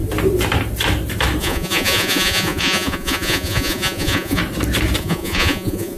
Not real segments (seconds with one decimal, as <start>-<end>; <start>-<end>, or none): 1.4-4.4; 5.0-6.0